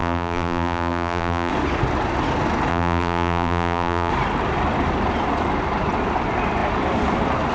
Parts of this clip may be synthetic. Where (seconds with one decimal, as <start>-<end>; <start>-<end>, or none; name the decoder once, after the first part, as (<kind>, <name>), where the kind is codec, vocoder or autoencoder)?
0.0-1.5 (vocoder, BigVGAN v2); 2.7-4.1